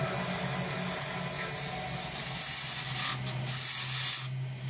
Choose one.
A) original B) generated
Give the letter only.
A